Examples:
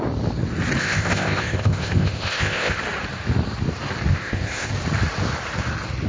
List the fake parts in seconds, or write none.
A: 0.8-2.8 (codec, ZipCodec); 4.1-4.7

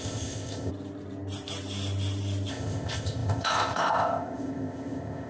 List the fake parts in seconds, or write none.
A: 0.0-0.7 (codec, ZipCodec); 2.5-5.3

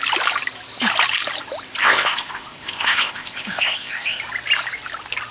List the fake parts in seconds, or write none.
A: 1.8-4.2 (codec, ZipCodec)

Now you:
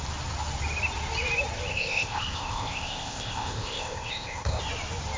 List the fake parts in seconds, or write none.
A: 1.7-4.6 (codec, ZipCodec)